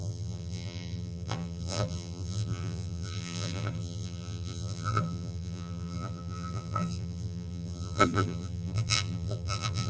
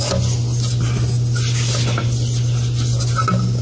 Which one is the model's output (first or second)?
first